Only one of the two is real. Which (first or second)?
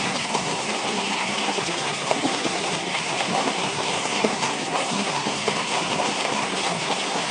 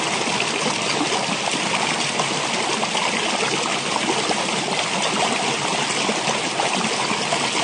second